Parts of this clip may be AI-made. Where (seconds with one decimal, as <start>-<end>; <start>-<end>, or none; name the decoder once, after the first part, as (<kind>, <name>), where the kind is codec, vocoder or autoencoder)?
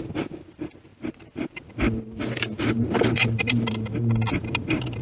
0.9-3.9 (vocoder, BigVGAN v2)